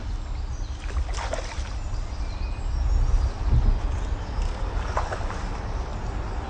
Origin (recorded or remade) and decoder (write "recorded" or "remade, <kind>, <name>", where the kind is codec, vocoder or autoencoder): recorded